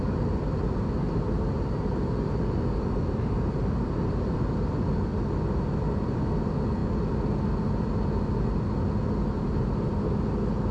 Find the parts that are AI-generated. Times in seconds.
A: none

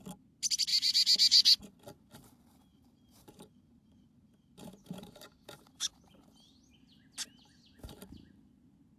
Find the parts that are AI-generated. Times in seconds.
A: 0.7-1.6; 2.7-6.1